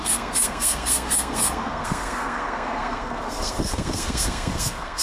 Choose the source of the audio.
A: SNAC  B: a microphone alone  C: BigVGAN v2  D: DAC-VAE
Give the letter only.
A